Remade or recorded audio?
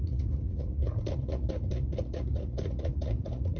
remade